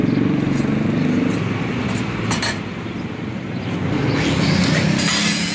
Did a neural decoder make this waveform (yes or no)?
no